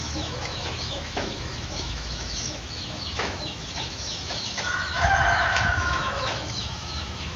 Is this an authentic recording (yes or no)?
no